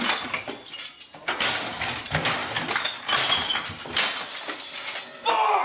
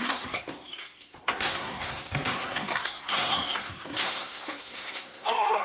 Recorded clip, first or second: first